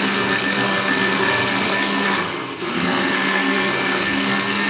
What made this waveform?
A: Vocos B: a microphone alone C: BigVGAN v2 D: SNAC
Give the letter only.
D